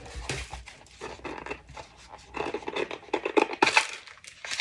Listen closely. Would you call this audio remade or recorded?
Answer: recorded